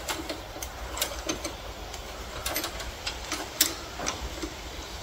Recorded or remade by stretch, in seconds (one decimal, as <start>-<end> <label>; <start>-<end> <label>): 0.0-5.0 recorded